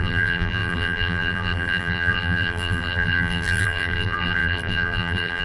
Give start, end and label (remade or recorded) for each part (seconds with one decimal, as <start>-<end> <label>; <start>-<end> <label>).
0.0-5.4 remade